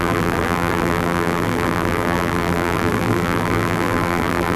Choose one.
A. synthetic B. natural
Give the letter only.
A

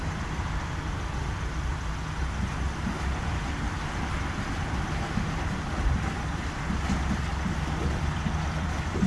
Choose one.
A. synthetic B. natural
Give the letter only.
B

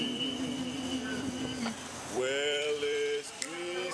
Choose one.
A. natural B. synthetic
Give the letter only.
B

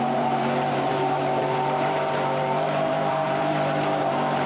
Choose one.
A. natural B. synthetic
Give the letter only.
B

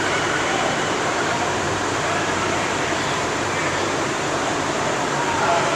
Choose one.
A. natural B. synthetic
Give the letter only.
B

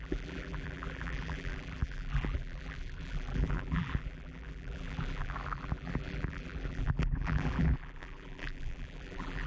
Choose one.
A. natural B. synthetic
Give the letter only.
B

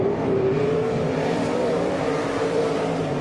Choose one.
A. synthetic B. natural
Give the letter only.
A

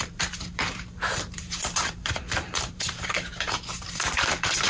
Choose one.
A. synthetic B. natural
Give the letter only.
A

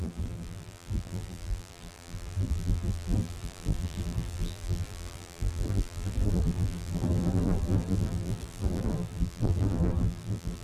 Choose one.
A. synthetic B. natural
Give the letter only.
A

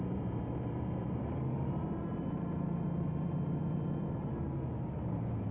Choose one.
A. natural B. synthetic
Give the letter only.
B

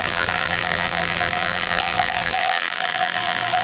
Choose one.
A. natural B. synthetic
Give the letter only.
B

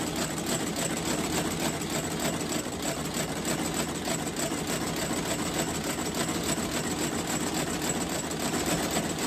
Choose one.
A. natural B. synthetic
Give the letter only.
A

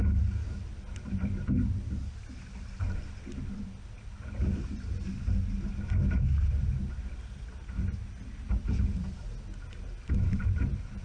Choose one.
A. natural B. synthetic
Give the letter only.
A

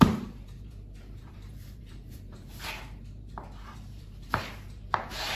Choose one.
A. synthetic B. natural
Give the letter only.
A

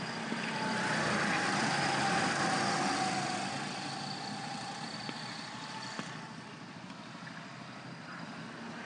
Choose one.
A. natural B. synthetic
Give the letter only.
A